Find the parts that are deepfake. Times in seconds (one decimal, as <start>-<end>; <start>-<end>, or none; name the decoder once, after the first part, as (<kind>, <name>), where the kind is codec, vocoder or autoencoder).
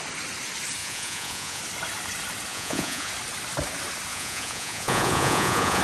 0.8-1.6 (vocoder, Vocos); 2.5-3.1; 4.1-5.8